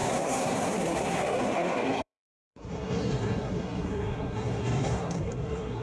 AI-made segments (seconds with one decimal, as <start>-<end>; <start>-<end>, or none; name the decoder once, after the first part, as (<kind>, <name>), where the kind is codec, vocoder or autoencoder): 0.0-5.8 (codec, SNAC)